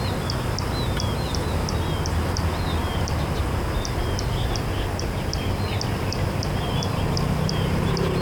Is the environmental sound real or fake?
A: real